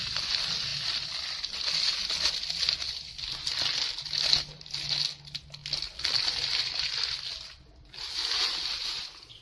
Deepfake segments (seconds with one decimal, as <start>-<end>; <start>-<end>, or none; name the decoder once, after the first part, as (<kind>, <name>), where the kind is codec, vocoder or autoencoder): none